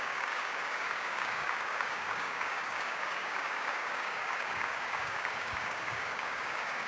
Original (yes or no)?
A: no